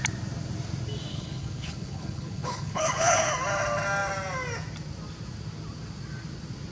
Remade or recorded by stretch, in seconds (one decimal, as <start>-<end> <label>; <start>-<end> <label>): 0.0-1.1 recorded; 1.1-3.3 remade; 3.3-6.7 recorded